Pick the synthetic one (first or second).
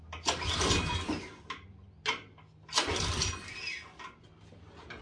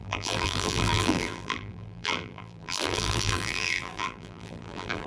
second